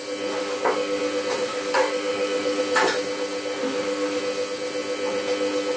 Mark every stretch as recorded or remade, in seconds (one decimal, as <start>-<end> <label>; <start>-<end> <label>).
0.0-0.4 recorded; 0.4-1.0 remade; 1.0-1.5 recorded; 1.5-2.6 remade; 2.6-3.6 recorded; 3.6-4.2 remade; 4.2-5.8 recorded